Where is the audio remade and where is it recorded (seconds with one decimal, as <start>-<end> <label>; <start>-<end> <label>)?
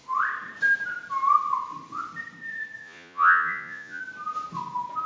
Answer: 0.0-2.8 recorded; 2.8-4.0 remade; 4.0-5.1 recorded